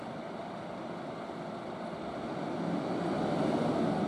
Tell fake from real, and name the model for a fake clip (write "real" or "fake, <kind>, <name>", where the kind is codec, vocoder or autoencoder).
real